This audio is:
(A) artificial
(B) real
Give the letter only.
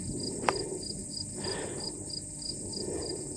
B